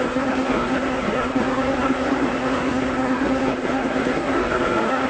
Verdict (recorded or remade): remade